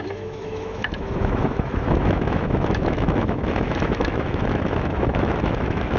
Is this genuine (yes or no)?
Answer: no